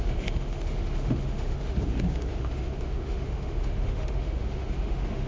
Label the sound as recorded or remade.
remade